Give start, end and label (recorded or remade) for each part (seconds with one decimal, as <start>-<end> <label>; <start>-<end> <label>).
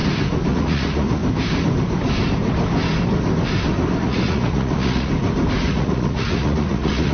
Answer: 0.0-0.5 recorded; 0.5-1.2 remade; 1.2-4.0 recorded; 4.0-5.1 remade; 5.1-5.6 recorded; 5.6-7.1 remade